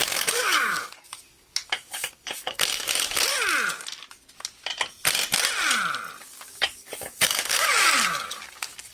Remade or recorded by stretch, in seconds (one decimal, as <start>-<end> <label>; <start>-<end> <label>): 0.0-3.3 remade; 3.3-6.2 recorded; 6.2-8.9 remade